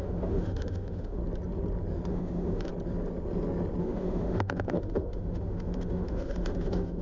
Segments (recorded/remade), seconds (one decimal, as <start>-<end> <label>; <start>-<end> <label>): 0.0-1.2 remade; 1.2-2.1 recorded; 2.1-2.7 remade; 2.7-3.8 recorded; 3.8-7.0 remade